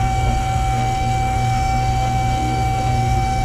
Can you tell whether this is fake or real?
fake